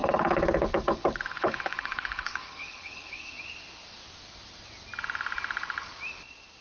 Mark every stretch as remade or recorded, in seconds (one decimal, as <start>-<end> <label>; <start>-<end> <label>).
0.0-3.3 remade; 3.3-6.6 recorded